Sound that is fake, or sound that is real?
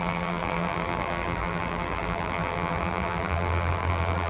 fake